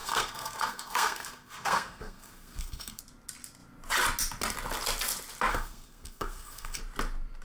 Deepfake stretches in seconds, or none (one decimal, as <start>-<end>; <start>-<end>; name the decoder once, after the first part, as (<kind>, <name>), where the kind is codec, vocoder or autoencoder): 0.0-3.0 (codec, SNAC); 5.5-6.8